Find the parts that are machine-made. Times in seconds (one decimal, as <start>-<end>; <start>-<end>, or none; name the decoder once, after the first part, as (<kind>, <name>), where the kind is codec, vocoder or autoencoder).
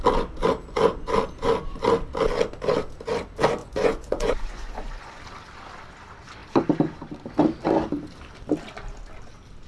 3.6-5.2 (vocoder, Vocos)